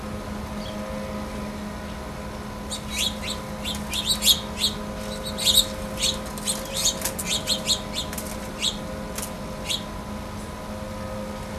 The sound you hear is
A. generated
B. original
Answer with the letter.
B